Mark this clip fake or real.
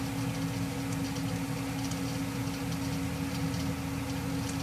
real